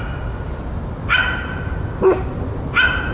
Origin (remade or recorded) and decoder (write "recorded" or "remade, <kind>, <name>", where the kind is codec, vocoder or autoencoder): recorded